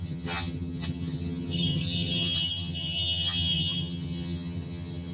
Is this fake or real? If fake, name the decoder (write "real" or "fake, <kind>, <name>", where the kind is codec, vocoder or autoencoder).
fake, vocoder, HiFi-GAN